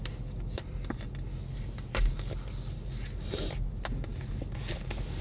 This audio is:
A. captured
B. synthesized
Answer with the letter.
A